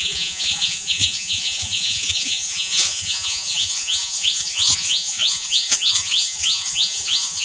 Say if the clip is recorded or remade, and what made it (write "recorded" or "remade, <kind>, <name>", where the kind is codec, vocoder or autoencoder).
remade, vocoder, Vocos